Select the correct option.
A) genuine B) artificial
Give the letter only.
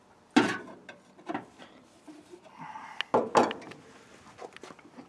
A